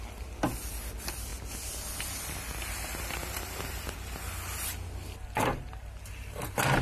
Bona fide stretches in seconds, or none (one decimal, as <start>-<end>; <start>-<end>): 0.0-6.8